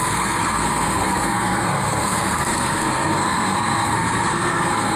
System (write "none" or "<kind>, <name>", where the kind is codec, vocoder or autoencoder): codec, SNAC